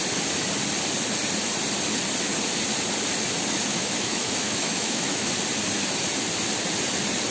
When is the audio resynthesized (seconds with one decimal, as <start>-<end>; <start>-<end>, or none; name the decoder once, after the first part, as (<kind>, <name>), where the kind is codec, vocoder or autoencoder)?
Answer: 3.7-5.3 (autoencoder, DAC-VAE)